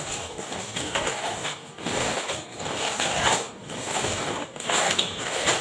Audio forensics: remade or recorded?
remade